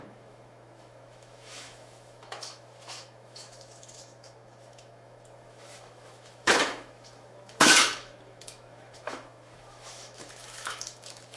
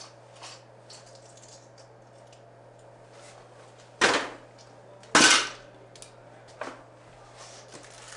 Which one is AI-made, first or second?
first